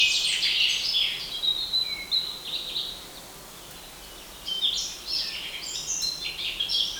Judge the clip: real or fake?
real